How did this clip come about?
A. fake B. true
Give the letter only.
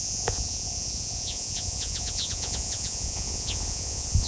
A